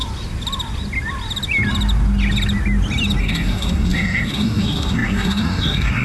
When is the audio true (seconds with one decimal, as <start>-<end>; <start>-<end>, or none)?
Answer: 0.0-3.2